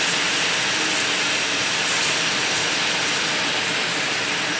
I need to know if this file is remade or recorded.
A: recorded